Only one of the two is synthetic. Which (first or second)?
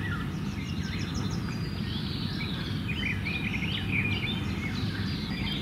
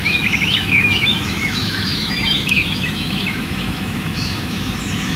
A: second